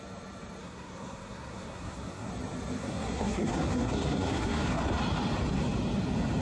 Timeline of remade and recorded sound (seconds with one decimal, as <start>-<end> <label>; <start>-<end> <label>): 0.0-0.6 recorded; 0.6-2.3 remade; 2.3-2.8 recorded; 2.8-4.8 remade; 4.8-6.4 recorded